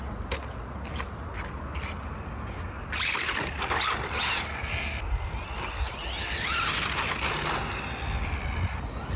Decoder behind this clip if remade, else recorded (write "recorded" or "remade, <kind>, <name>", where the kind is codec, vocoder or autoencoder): recorded